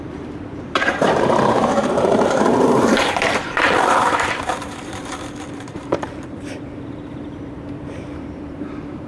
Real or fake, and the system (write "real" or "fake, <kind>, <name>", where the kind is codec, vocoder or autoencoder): fake, vocoder, BigVGAN v2